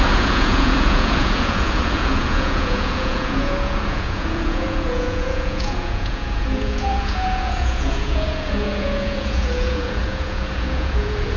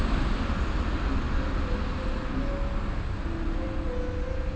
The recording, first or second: second